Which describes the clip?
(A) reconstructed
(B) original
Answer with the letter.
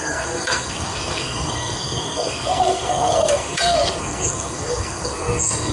A